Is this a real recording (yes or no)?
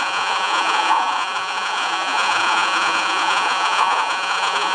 no